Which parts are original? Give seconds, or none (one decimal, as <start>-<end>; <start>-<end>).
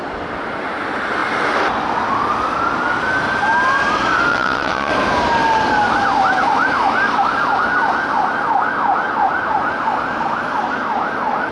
0.0-4.3; 4.9-11.5